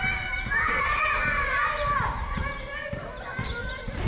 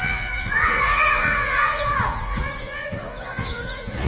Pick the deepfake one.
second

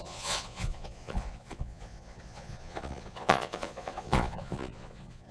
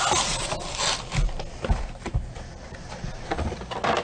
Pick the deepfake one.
first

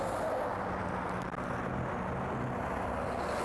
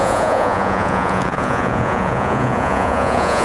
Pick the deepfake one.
second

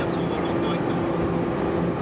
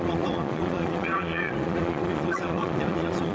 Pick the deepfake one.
second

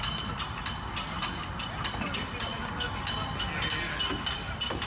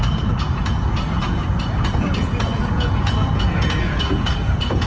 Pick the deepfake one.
second